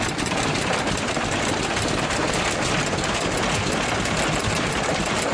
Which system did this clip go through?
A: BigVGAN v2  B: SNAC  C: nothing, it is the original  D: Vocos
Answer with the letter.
C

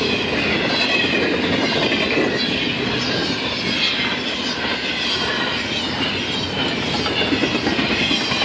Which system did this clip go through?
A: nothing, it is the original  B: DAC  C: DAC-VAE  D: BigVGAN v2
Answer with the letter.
A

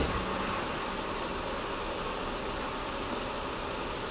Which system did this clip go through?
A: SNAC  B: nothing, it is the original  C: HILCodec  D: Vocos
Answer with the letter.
B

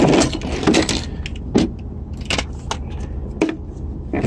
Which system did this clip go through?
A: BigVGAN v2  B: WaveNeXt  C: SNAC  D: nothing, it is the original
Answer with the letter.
D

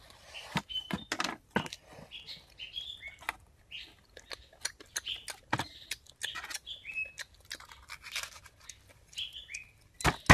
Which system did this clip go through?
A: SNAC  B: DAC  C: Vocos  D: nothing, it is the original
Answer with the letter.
D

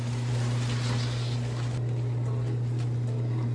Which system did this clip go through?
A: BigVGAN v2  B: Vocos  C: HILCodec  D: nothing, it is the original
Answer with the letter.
D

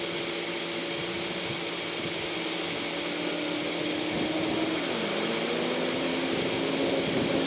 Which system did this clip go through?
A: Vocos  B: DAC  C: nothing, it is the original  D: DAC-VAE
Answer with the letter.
C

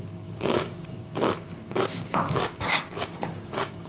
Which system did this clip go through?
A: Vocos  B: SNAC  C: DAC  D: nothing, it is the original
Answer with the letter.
C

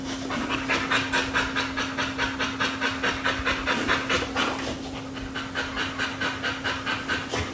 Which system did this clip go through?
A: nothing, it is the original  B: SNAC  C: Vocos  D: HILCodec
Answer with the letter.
A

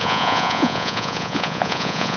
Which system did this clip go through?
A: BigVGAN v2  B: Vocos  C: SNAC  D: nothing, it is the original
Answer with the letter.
B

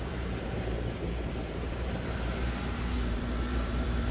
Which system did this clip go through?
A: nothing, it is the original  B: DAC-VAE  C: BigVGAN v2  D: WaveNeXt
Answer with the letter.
C